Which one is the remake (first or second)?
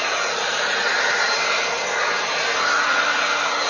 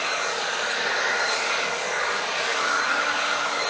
second